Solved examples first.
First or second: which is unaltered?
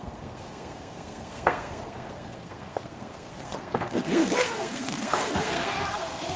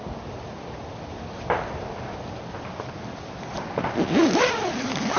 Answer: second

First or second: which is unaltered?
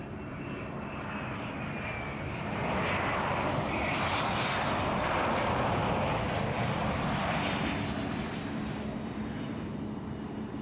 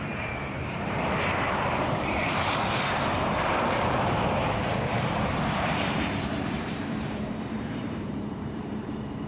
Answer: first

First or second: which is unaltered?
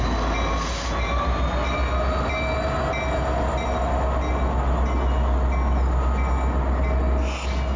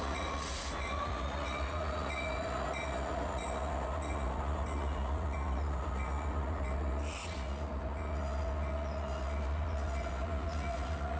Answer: first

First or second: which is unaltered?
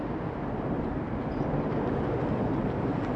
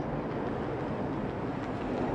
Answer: second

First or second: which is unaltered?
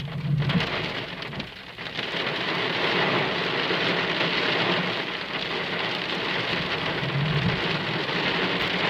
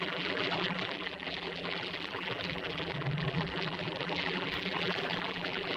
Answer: first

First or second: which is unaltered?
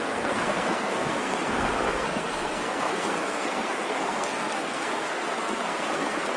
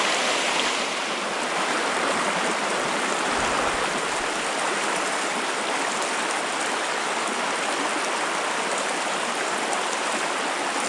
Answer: second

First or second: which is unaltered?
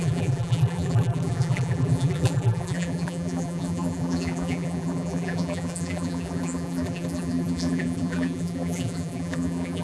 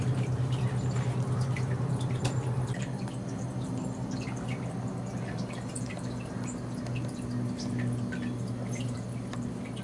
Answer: second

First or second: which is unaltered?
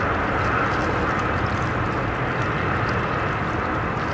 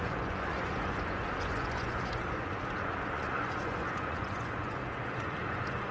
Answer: first